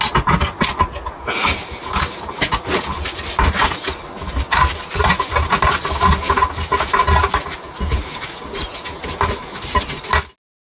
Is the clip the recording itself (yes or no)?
yes